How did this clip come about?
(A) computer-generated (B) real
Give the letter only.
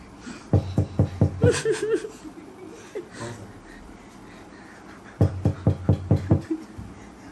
B